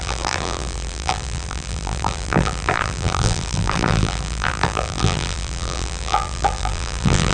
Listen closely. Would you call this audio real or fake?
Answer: fake